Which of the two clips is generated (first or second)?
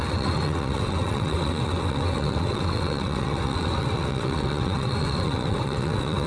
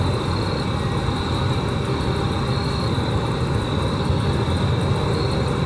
first